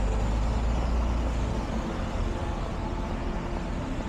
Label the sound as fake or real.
real